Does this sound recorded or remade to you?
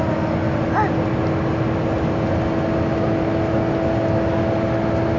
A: recorded